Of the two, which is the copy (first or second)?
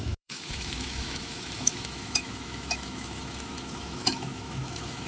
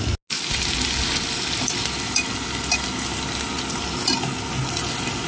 first